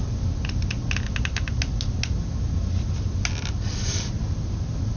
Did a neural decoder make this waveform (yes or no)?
no